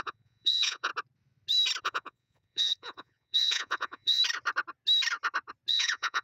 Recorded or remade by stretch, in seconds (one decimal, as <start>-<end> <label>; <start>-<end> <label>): 0.0-0.9 remade; 0.9-1.8 recorded; 1.8-4.2 remade; 4.2-5.7 recorded; 5.7-6.2 remade